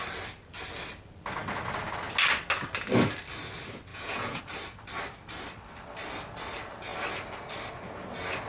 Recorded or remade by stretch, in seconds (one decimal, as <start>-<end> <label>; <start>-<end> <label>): 0.0-3.9 recorded; 3.9-4.4 remade; 4.4-8.5 recorded